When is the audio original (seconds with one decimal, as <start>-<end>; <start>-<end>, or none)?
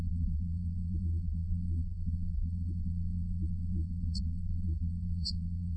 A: none